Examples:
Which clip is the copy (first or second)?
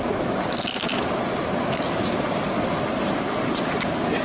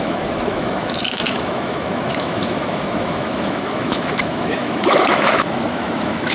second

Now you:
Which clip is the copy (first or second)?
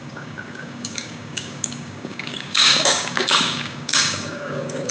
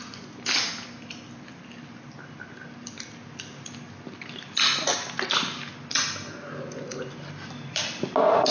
first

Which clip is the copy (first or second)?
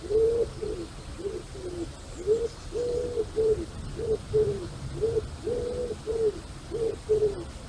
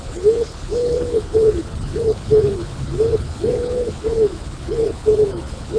second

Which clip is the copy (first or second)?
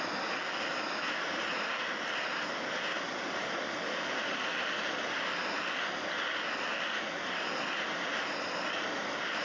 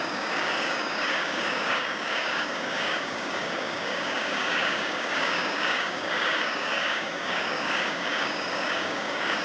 second